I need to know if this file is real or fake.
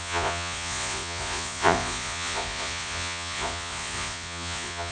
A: fake